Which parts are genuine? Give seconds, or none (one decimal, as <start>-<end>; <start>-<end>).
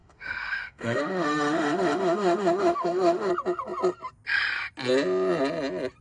3.3-6.0